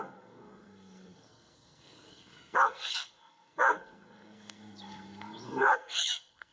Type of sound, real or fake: fake